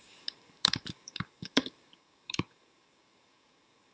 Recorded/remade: remade